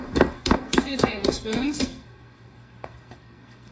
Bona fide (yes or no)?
no